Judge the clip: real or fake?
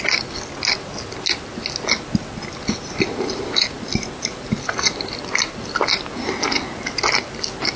real